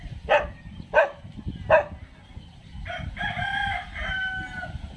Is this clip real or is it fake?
real